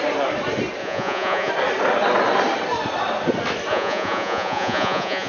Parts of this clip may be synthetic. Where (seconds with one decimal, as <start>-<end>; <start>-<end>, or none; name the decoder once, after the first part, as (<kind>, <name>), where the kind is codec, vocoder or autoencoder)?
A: 0.8-1.5 (vocoder, Vocos); 3.7-5.3